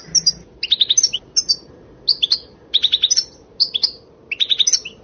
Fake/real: real